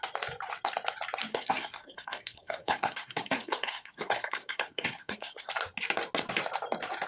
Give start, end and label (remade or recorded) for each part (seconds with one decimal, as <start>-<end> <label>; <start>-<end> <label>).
0.0-1.3 recorded; 1.3-5.5 remade; 5.5-7.1 recorded